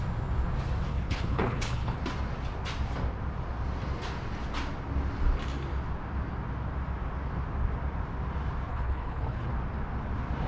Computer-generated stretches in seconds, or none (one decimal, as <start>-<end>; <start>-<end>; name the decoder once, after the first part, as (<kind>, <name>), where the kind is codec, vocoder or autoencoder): 0.9-2.0 (codec, HILCodec); 8.7-9.5